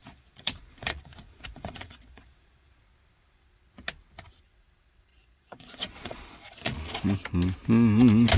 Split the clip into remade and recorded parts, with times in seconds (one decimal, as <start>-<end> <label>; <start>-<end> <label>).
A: 0.0-2.8 remade; 2.8-5.1 recorded; 5.1-7.0 remade; 7.0-8.4 recorded